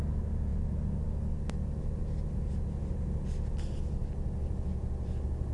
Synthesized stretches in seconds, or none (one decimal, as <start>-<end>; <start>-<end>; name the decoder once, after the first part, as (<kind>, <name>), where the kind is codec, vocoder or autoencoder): none